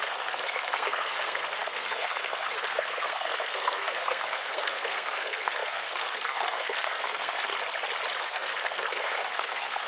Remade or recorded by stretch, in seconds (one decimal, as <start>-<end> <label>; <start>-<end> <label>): 0.0-7.5 remade; 7.5-8.2 recorded; 8.2-9.9 remade